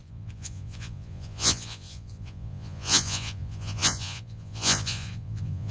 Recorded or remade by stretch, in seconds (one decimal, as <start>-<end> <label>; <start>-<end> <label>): 0.0-5.7 remade

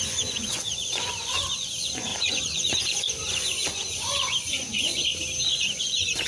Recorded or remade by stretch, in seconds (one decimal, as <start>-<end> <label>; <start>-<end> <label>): 0.0-5.0 remade; 5.0-5.6 recorded; 5.6-6.3 remade

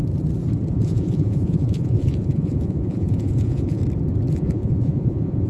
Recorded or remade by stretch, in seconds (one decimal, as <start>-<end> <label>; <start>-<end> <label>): 0.0-0.7 recorded; 0.7-3.8 remade; 3.8-4.3 recorded; 4.3-5.5 remade

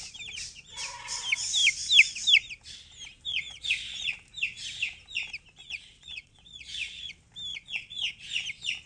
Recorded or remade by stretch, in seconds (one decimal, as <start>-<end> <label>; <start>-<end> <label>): 0.0-3.3 recorded; 3.3-4.1 remade; 4.1-5.6 recorded; 5.6-7.1 remade; 7.1-7.5 recorded; 7.5-8.1 remade; 8.1-8.9 recorded